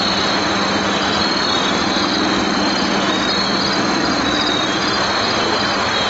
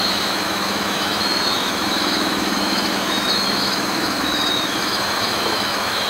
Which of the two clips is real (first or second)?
first